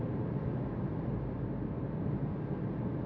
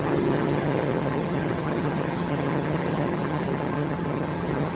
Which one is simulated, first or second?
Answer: second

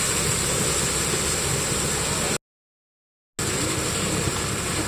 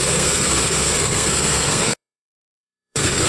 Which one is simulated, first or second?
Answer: second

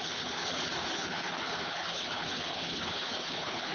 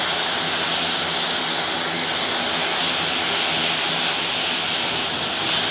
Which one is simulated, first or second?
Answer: first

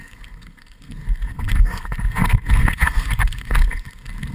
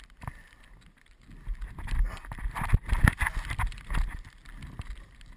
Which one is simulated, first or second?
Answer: first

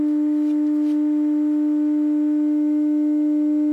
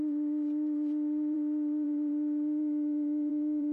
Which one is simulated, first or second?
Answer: second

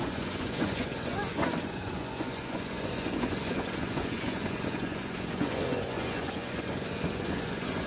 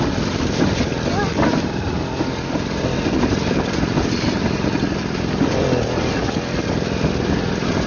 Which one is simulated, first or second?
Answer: first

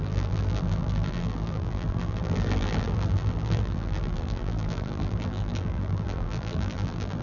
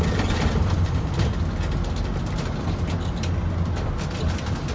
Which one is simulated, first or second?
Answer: first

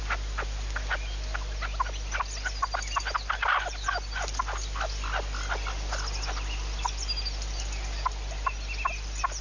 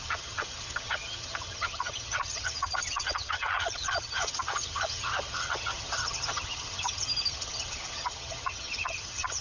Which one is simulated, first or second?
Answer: second